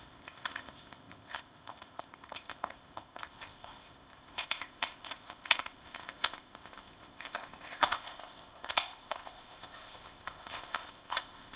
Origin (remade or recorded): remade